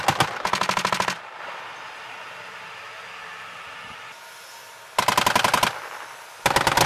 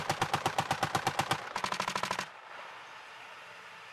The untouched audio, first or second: first